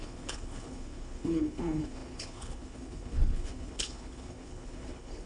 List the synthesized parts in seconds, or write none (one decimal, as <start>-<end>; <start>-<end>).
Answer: 0.0-5.3